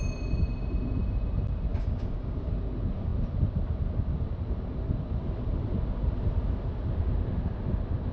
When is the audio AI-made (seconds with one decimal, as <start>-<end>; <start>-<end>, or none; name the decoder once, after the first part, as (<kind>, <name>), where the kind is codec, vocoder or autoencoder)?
1.7-2.5 (codec, DAC)